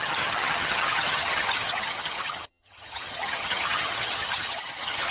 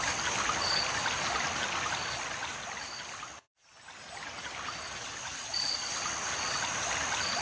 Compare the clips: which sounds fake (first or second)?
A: first